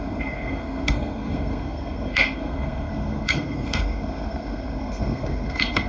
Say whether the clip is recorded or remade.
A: remade